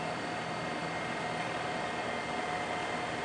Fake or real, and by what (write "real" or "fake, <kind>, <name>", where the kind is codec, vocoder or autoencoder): real